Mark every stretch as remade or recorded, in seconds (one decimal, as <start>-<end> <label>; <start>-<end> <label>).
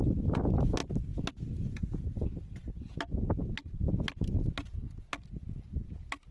0.0-6.3 recorded